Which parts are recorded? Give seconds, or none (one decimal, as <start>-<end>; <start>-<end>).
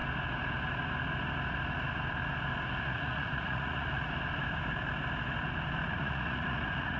0.0-2.8; 4.0-5.9